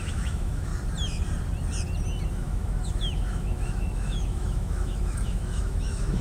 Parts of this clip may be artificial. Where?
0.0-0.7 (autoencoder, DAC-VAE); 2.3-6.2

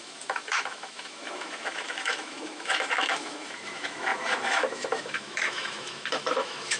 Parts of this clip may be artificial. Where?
0.0-6.8 (autoencoder, DAC-VAE)

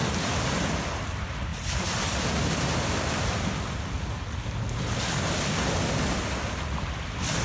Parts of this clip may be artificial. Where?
none